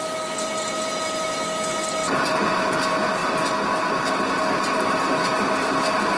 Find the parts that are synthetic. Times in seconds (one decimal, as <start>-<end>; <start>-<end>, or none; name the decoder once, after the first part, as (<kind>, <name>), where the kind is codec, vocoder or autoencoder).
none